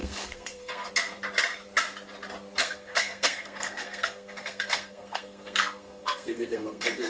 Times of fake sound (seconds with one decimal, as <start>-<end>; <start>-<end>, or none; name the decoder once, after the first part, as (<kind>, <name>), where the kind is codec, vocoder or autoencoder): 0.0-0.9 (codec, SNAC); 2.6-7.1